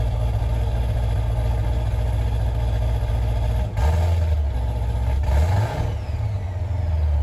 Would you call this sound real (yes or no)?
yes